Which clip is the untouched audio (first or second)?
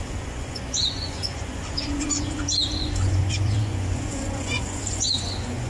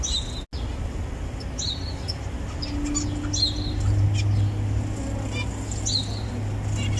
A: second